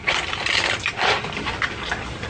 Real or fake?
real